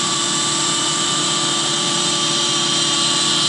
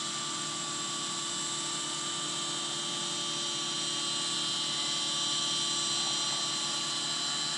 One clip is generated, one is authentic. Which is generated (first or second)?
first